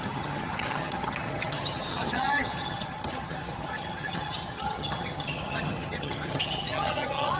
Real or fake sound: fake